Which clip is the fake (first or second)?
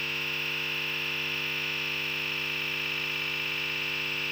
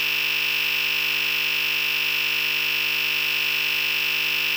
first